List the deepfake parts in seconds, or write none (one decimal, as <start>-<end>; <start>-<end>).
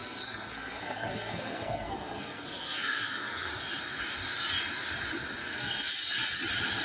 0.0-3.5; 5.4-5.9